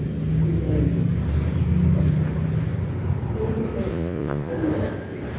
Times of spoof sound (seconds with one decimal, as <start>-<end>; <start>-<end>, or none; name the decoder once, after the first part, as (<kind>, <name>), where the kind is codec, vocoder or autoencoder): 3.9-4.5 (vocoder, Vocos)